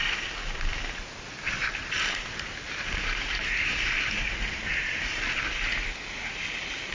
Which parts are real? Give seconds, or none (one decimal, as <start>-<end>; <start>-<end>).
0.0-6.9